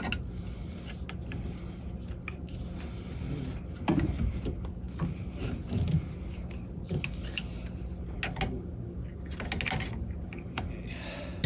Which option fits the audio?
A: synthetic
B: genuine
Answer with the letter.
B